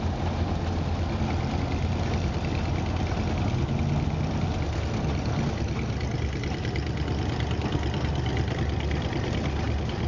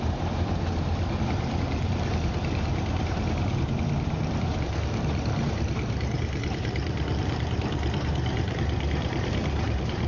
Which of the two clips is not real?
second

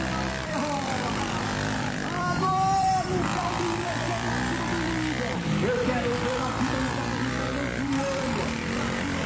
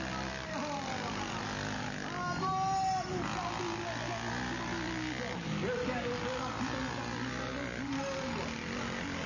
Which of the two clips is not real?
first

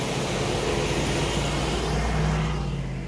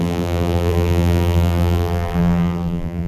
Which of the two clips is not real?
second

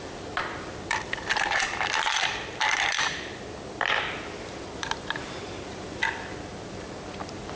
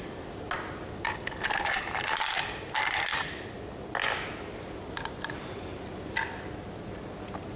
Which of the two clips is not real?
first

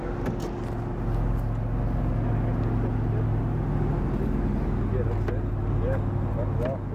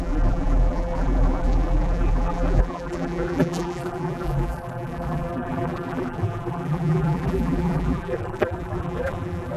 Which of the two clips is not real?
second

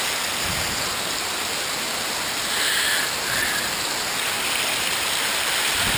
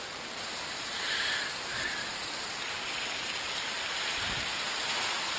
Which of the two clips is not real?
second